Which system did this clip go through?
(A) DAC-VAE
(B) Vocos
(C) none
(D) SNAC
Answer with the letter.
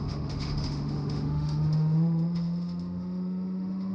A